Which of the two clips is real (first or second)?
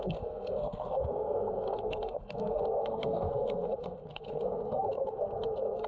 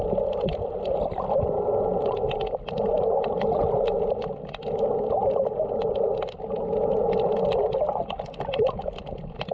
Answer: second